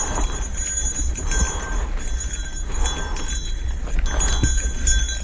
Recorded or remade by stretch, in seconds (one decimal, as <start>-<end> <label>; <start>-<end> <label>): 0.0-5.2 recorded